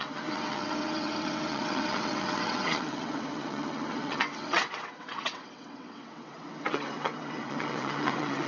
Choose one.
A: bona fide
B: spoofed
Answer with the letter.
B